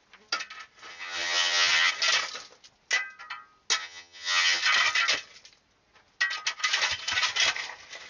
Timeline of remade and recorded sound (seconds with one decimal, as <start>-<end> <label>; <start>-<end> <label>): 0.0-0.9 recorded; 0.9-1.9 remade; 1.9-3.8 recorded; 3.8-4.6 remade; 4.6-8.1 recorded